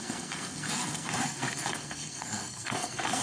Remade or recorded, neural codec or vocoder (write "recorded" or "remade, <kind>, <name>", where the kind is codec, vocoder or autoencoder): remade, codec, SNAC